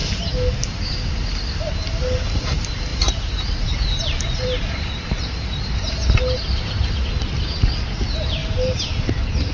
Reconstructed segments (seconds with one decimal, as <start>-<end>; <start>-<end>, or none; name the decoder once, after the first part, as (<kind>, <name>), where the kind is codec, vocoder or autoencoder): 2.9-5.9 (vocoder, BigVGAN v2); 8.4-9.1